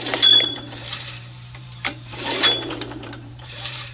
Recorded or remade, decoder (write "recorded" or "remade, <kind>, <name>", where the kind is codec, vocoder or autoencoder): remade, vocoder, BigVGAN v2